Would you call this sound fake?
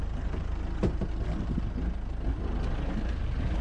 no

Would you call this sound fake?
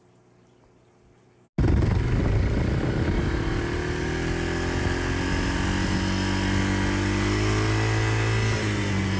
no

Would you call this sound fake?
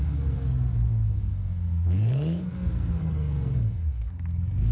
yes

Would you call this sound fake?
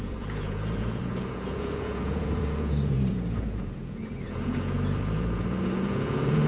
yes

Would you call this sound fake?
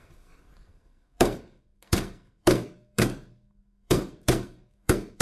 yes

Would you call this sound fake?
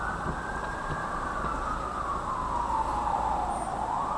no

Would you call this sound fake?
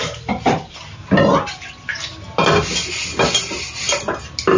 no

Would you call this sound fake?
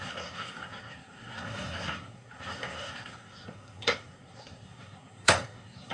yes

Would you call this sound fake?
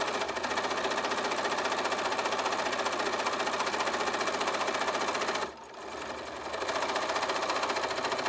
no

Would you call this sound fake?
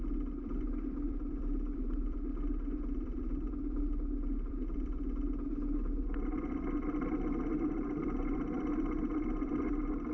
yes